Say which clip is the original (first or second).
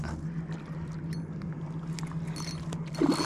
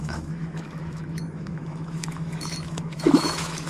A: first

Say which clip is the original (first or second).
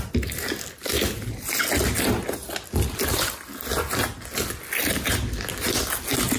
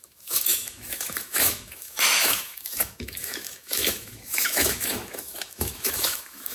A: first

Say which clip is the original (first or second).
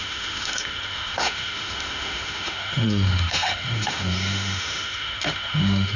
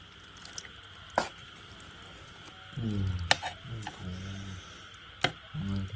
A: second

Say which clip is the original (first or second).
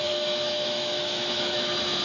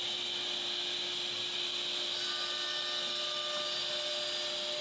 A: second